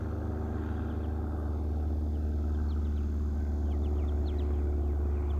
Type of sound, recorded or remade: recorded